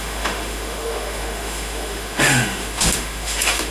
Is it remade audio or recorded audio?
remade